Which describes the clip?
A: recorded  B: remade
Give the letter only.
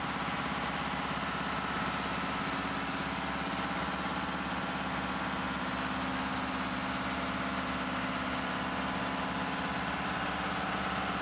A